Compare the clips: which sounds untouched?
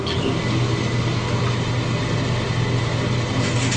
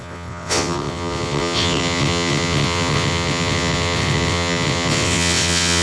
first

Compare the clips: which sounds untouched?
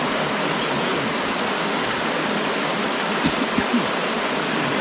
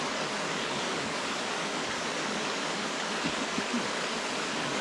first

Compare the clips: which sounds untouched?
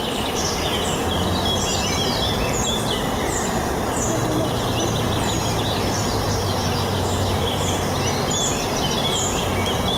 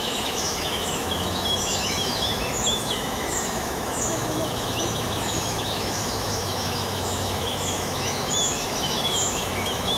first